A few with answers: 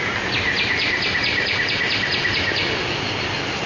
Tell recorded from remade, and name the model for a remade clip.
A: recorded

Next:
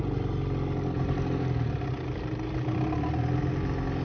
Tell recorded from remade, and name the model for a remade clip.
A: recorded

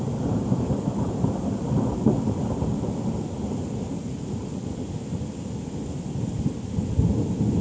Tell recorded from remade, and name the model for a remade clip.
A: recorded